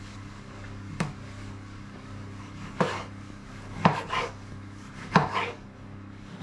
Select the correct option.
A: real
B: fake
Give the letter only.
B